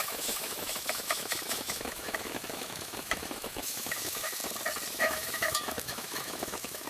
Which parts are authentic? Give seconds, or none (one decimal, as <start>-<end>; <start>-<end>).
4.4-4.9